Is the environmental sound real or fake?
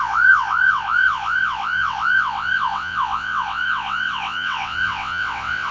fake